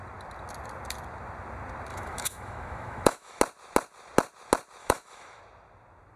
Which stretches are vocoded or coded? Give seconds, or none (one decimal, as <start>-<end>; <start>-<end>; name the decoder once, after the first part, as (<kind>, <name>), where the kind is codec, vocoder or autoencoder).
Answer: 1.9-3.4 (autoencoder, DAC-VAE); 4.8-5.4